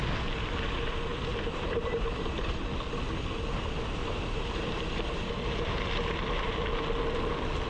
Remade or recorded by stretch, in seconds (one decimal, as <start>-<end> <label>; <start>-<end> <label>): 0.0-1.1 recorded; 1.1-2.7 remade; 2.7-4.0 recorded; 4.0-5.3 remade; 5.3-7.7 recorded